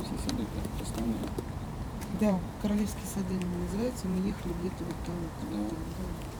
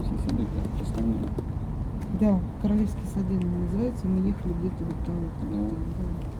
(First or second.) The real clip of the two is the second